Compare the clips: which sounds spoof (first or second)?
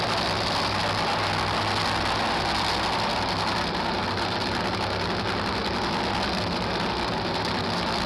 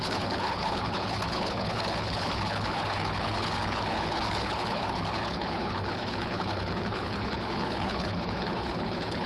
second